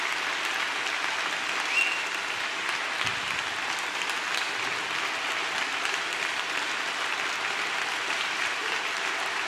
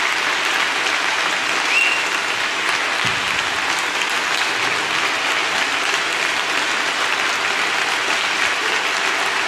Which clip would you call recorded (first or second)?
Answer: second